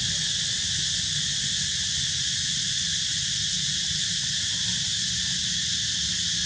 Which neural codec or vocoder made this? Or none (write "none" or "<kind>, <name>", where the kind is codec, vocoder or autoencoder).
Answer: none